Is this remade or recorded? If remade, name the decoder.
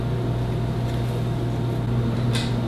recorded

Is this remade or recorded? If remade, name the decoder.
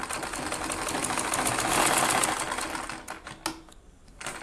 recorded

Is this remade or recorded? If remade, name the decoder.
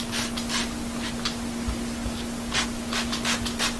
recorded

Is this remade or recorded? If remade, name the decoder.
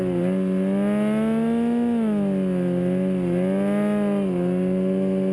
recorded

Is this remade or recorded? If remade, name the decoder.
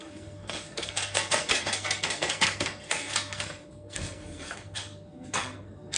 remade, codec, SNAC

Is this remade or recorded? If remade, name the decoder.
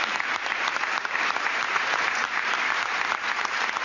remade, vocoder, BigVGAN v2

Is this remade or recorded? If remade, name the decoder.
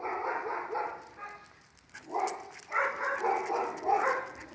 recorded